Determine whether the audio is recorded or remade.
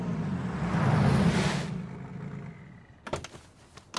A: recorded